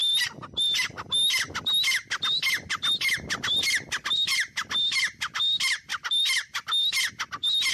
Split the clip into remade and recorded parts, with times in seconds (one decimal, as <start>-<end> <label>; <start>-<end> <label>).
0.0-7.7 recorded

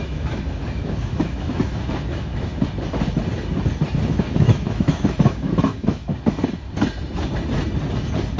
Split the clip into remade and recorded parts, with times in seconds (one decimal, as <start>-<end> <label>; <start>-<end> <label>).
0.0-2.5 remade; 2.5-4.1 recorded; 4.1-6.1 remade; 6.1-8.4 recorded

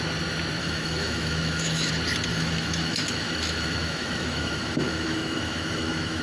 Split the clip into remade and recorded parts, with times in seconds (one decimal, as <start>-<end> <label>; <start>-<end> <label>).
0.0-0.6 recorded; 0.6-1.9 remade; 1.9-2.3 recorded; 2.3-6.2 remade

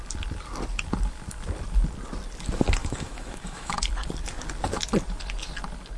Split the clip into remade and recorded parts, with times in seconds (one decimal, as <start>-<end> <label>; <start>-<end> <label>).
0.0-2.8 recorded; 2.8-3.8 remade; 3.8-6.0 recorded